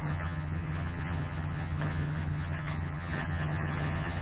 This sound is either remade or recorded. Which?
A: remade